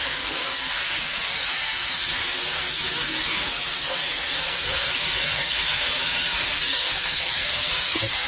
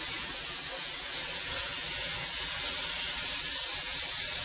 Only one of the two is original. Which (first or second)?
second